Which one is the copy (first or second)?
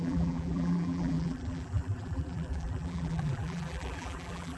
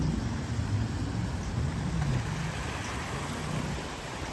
first